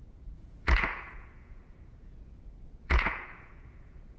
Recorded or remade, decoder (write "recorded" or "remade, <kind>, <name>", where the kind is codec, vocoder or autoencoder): remade, vocoder, Vocos